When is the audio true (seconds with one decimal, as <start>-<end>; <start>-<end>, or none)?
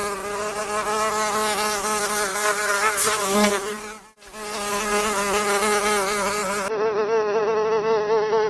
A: 0.0-2.3; 3.6-8.5